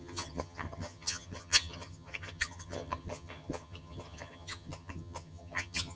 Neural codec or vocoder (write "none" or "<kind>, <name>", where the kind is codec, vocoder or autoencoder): vocoder, HiFi-GAN